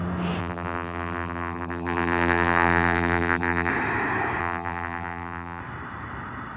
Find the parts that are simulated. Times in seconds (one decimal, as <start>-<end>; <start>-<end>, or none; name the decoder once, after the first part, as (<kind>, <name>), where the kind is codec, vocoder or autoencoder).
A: 0.4-3.7 (vocoder, BigVGAN v2); 4.4-5.6